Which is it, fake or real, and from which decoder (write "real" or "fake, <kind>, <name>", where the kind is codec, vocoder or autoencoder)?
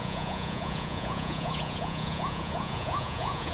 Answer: fake, vocoder, Vocos